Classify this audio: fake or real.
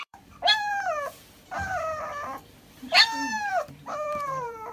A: fake